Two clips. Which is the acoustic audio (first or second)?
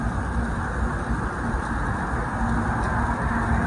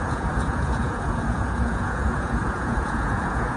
first